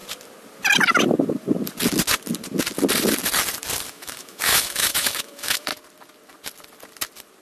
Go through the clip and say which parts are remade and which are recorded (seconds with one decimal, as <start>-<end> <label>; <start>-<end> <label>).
0.0-3.9 recorded; 3.9-5.7 remade; 5.7-7.4 recorded